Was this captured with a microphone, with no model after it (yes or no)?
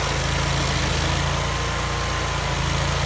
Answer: yes